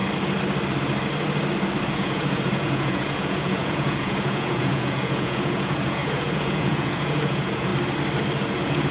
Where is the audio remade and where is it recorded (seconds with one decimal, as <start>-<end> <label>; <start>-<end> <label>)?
0.0-1.9 recorded; 1.9-7.7 remade; 7.7-8.5 recorded; 8.5-8.9 remade